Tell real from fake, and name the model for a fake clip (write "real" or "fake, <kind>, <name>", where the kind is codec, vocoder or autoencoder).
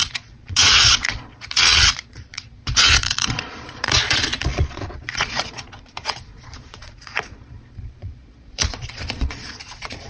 fake, vocoder, Vocos